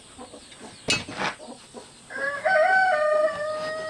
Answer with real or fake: real